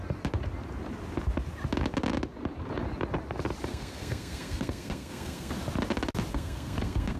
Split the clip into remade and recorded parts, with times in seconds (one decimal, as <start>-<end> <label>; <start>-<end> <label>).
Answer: 0.0-3.7 recorded; 3.7-5.5 remade; 5.5-6.3 recorded; 6.3-7.2 remade